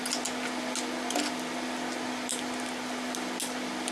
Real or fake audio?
real